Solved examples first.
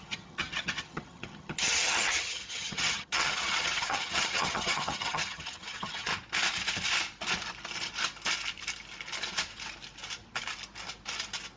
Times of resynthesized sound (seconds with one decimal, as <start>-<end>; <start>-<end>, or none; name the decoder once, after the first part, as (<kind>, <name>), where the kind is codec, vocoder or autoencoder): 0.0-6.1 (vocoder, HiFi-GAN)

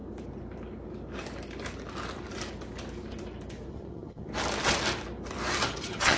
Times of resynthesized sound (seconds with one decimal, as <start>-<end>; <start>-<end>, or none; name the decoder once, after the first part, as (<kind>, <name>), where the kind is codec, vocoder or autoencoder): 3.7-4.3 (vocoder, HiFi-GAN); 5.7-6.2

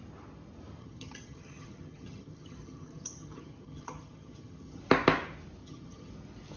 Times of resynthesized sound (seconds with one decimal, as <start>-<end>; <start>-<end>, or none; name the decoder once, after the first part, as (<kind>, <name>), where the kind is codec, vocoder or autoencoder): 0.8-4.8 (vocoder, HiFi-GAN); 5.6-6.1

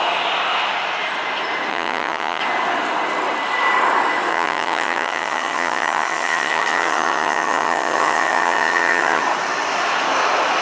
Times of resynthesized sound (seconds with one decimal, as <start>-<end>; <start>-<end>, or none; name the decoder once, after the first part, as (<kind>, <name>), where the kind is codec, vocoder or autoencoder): 1.7-2.4 (vocoder, HiFi-GAN); 4.3-9.2